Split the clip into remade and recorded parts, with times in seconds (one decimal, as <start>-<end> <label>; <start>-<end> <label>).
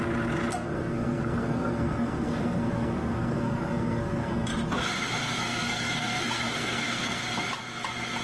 0.0-0.5 recorded; 0.5-4.5 remade; 4.5-5.2 recorded; 5.2-7.2 remade; 7.2-8.2 recorded